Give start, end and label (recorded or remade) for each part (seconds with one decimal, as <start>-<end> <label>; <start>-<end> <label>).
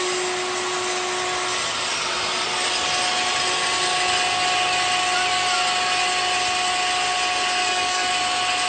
0.0-7.6 recorded; 7.6-8.1 remade; 8.1-8.7 recorded